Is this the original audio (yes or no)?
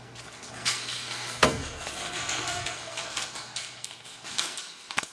no